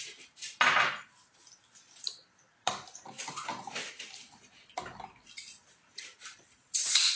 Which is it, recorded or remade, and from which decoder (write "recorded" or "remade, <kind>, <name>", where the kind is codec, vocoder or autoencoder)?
remade, vocoder, BigVGAN v2